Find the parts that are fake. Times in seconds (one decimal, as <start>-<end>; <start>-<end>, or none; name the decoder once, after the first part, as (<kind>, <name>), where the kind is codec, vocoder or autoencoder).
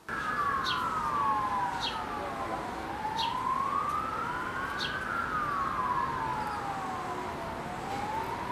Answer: none